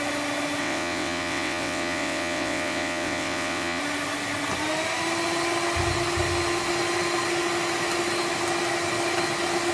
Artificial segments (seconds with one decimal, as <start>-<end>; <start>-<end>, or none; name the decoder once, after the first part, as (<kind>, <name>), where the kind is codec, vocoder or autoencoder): 0.6-3.8 (vocoder, WaveNeXt)